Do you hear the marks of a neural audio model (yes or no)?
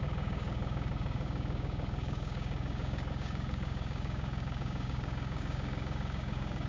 yes